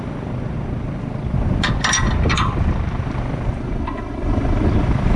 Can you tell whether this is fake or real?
real